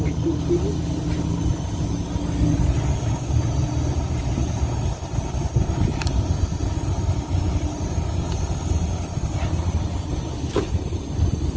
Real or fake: real